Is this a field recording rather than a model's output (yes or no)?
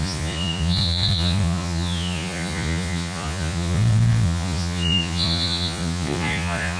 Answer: no